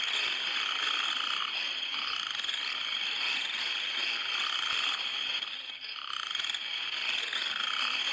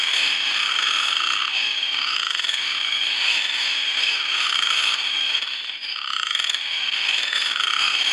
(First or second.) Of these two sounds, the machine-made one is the second